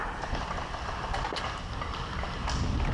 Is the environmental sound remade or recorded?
recorded